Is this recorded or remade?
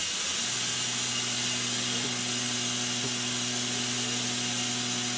recorded